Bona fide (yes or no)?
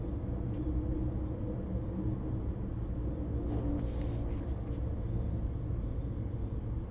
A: yes